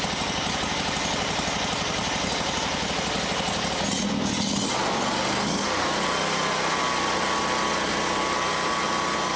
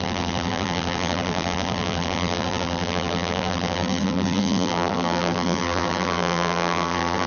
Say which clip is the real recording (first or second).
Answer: first